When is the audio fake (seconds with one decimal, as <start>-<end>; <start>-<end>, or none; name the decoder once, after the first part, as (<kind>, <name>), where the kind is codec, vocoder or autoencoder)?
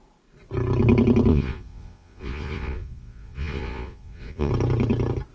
1.3-4.5 (vocoder, Vocos)